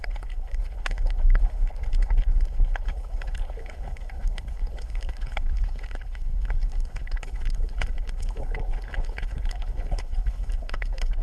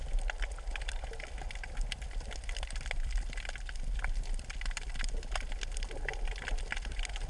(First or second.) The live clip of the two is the second